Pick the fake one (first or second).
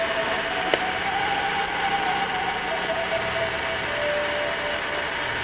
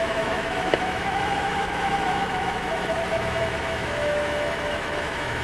second